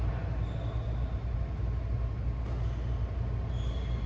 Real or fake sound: real